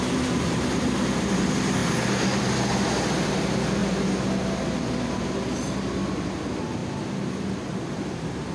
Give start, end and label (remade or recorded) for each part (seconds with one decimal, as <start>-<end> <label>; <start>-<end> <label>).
0.0-8.5 recorded